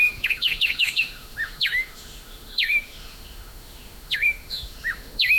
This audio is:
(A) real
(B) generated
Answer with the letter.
B